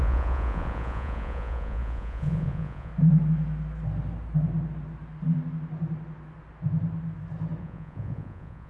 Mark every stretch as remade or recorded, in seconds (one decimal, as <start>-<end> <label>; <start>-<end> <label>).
0.0-2.9 remade; 2.9-7.6 recorded; 7.6-8.7 remade